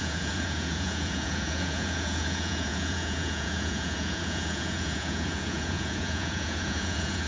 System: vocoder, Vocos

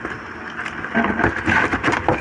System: none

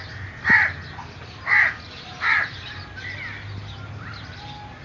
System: none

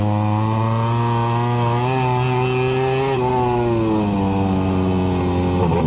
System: none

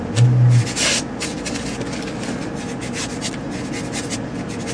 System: none